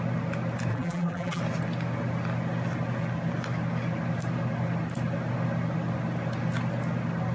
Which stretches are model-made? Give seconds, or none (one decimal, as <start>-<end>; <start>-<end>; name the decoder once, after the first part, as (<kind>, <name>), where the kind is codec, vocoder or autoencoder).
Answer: 0.7-1.4 (vocoder, BigVGAN v2)